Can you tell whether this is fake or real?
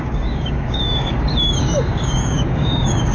fake